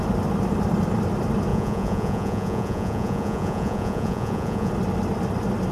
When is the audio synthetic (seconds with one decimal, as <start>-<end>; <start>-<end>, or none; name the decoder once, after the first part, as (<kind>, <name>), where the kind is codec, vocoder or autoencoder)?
1.5-4.7 (vocoder, Vocos)